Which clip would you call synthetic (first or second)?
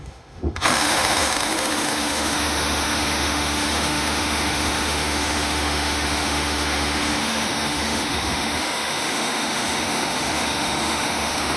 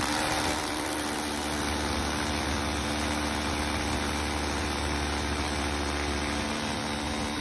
first